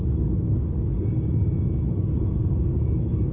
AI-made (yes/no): yes